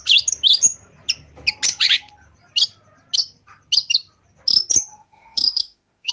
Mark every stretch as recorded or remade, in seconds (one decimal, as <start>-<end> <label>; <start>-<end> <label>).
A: 0.0-4.9 recorded; 4.9-6.1 remade